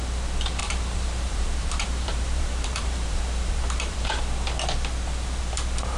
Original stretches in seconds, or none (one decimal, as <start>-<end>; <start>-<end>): 0.0-0.6; 4.2-6.0